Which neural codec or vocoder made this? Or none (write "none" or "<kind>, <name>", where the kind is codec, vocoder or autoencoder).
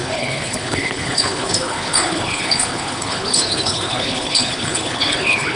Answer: codec, HILCodec